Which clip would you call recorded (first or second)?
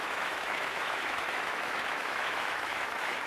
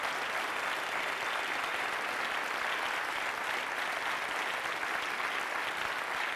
second